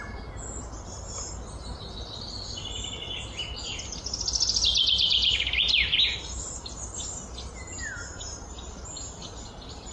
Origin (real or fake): real